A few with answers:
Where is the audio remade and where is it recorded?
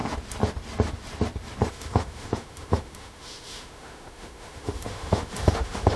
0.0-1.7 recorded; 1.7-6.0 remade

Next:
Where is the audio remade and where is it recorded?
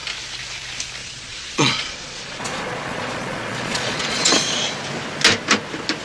0.0-1.0 recorded; 1.0-4.6 remade; 4.6-6.0 recorded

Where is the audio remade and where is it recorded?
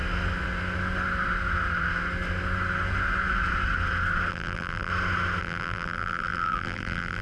0.0-4.3 recorded; 4.3-4.9 remade; 4.9-5.4 recorded; 5.4-7.2 remade